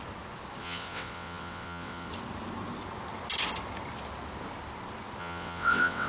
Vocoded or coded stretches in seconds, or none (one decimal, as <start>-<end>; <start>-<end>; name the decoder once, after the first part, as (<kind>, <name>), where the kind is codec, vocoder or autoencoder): 0.6-2.1 (vocoder, WaveNeXt); 5.2-6.1